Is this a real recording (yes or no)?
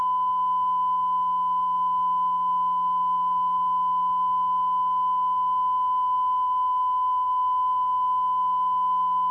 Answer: yes